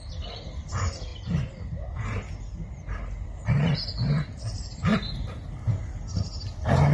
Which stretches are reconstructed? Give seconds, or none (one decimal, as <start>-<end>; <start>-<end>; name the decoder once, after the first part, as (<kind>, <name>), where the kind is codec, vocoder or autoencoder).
0.0-1.1 (vocoder, BigVGAN v2); 2.4-4.9; 5.5-6.9